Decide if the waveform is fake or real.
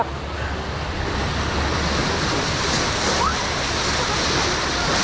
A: real